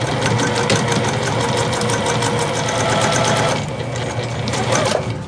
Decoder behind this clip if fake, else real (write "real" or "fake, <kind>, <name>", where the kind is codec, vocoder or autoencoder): real